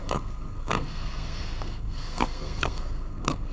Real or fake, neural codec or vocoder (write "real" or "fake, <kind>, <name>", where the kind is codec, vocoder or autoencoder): fake, codec, SNAC